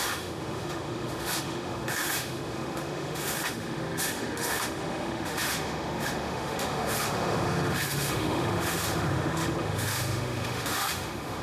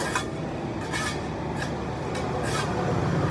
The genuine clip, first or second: second